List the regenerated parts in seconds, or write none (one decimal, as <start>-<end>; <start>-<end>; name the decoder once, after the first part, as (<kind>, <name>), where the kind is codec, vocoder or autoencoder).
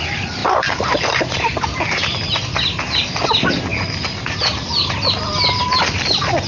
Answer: 0.4-1.2 (vocoder, BigVGAN v2)